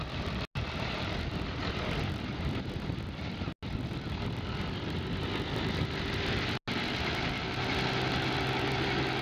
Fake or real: real